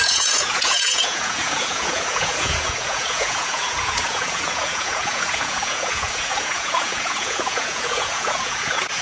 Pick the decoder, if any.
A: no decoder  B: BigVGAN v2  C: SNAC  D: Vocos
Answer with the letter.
D